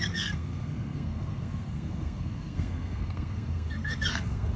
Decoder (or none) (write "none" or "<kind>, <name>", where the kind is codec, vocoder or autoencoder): codec, SNAC